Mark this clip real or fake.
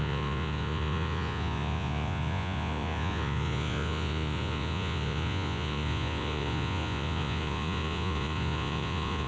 fake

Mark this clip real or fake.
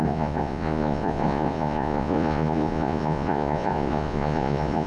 fake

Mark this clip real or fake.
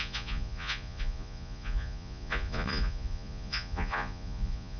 fake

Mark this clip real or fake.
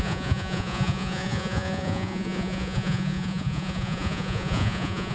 fake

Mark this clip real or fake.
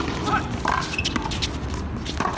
real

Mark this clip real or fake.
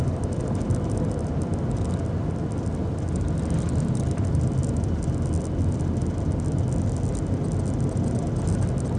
real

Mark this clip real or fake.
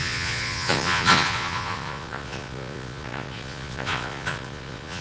fake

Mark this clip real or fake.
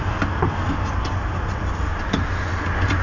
real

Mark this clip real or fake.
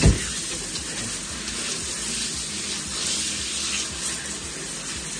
real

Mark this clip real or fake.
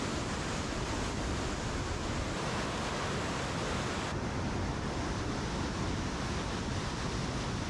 real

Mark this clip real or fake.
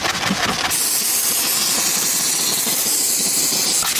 real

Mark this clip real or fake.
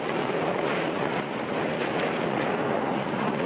fake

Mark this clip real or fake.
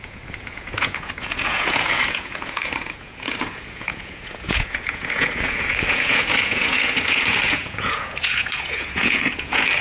fake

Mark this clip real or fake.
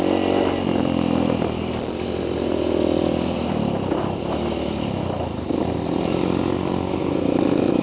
real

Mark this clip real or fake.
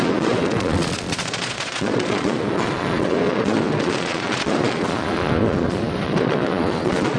fake